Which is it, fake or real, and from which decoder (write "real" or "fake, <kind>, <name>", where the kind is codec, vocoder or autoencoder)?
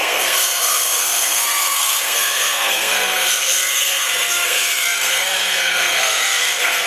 fake, codec, SNAC